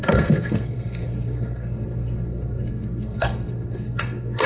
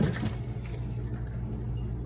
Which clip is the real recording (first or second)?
second